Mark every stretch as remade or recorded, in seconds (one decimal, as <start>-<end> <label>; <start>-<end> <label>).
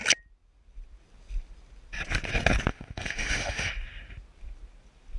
0.0-2.7 recorded; 2.7-3.7 remade; 3.7-5.2 recorded